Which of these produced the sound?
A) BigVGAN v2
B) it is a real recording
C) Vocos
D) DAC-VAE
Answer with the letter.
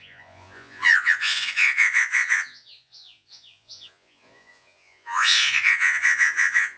C